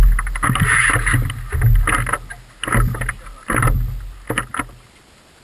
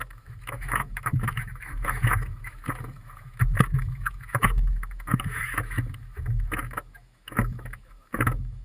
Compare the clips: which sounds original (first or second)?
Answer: first